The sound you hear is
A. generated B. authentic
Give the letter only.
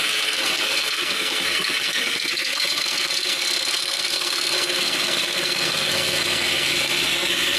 A